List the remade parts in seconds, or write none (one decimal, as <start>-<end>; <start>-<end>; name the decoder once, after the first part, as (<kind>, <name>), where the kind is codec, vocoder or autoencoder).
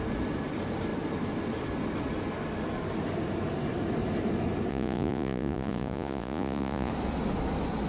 4.7-6.9 (vocoder, Vocos)